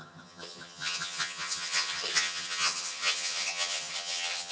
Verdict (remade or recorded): remade